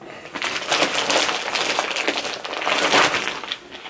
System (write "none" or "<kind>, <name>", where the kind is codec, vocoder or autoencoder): none